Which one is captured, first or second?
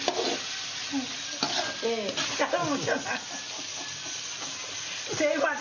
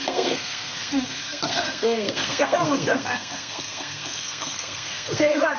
first